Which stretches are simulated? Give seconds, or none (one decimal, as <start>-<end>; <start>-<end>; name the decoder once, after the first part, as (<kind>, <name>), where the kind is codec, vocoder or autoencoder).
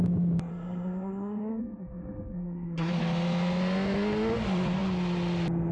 0.5-2.9 (codec, SNAC)